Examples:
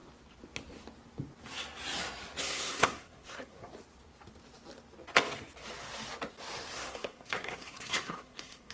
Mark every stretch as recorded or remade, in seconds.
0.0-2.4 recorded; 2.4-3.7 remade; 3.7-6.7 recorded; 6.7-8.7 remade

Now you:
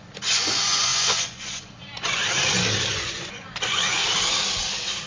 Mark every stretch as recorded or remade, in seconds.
0.0-2.2 remade; 2.2-2.9 recorded; 2.9-4.0 remade; 4.0-5.1 recorded

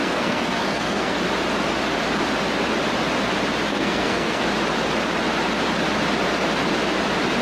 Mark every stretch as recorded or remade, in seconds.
0.0-1.2 remade; 1.2-3.7 recorded; 3.7-4.4 remade; 4.4-7.4 recorded

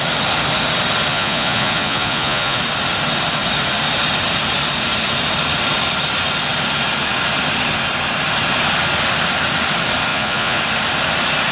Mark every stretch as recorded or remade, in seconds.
0.0-1.1 recorded; 1.1-2.6 remade; 2.6-10.1 recorded; 10.1-10.6 remade; 10.6-11.5 recorded

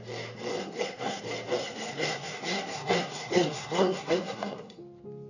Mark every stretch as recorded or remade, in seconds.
0.0-0.6 recorded; 0.6-1.2 remade; 1.2-1.6 recorded; 1.6-4.8 remade; 4.8-5.3 recorded